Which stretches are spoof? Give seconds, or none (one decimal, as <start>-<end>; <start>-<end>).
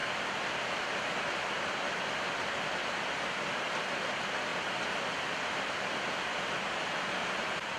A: 4.5-6.0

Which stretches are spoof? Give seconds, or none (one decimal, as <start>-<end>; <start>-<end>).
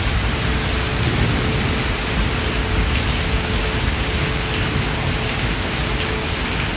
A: none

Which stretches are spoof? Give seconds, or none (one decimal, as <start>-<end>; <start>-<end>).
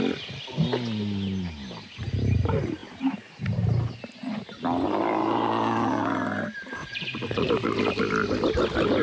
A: 6.8-7.5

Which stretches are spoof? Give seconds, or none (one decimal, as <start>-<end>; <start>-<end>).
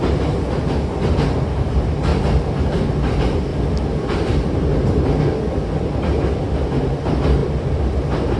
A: 3.5-5.2; 7.4-7.9